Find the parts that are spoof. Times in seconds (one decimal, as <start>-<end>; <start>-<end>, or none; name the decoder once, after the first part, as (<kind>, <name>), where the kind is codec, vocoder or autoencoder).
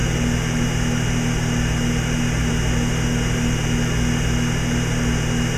0.0-2.5 (vocoder, BigVGAN v2)